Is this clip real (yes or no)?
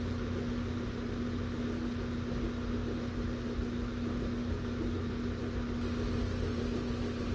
yes